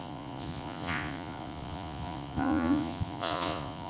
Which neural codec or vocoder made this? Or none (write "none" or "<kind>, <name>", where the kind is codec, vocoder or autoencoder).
vocoder, Vocos